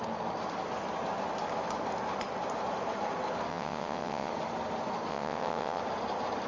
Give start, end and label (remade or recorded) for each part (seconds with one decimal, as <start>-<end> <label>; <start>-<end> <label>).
0.0-3.5 recorded; 3.5-4.3 remade; 4.3-5.1 recorded; 5.1-5.8 remade; 5.8-6.5 recorded